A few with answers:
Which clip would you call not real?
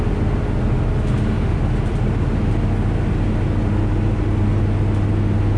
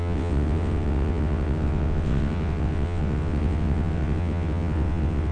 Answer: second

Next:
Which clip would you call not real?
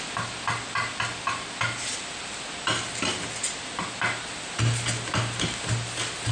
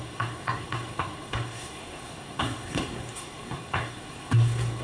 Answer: second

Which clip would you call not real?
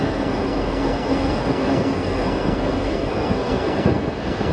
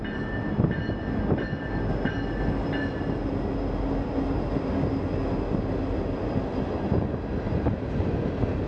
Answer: first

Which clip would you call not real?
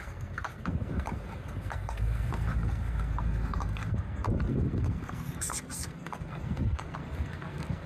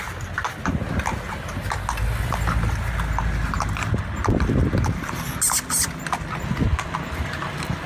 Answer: first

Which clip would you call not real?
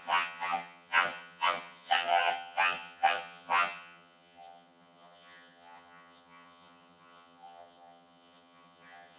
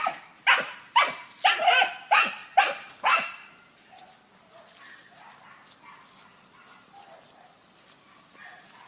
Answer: first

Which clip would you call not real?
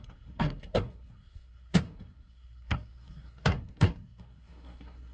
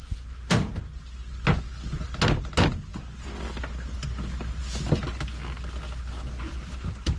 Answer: first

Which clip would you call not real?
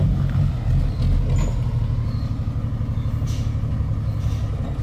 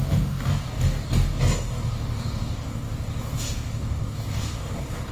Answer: second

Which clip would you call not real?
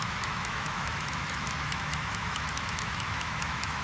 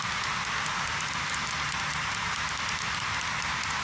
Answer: first